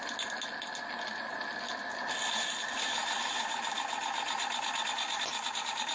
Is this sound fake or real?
real